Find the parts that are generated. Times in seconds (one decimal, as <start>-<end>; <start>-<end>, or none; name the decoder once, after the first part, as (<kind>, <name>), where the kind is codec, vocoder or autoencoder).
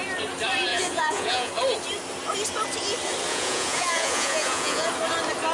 0.7-1.5 (vocoder, Vocos); 3.3-4.9